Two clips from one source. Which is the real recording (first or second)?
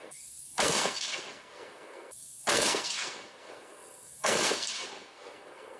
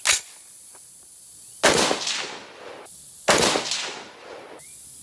second